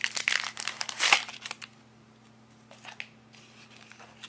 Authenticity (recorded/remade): recorded